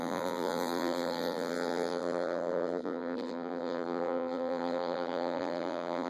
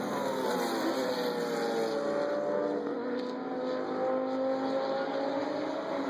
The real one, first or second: second